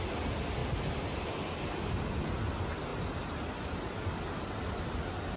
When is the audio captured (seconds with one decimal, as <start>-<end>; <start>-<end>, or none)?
0.0-5.4